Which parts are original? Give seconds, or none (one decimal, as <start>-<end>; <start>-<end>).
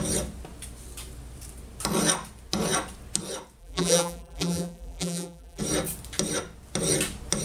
0.0-3.6; 5.6-7.4